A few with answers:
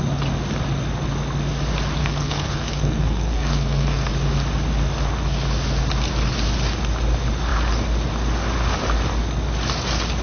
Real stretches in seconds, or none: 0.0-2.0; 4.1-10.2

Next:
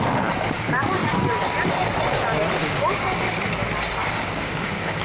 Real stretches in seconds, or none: 0.0-2.6; 3.2-4.0

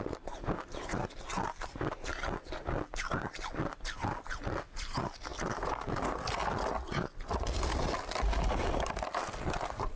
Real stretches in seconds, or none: 0.0-10.0

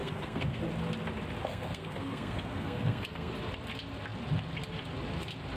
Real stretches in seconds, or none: 0.6-1.4; 3.3-5.6

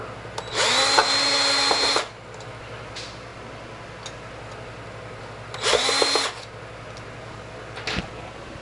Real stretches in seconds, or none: 0.0-8.6

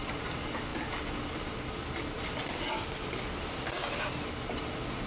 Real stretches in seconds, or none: 0.0-5.1